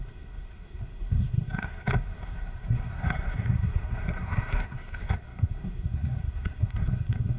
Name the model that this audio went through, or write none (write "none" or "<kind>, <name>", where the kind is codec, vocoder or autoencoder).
codec, SNAC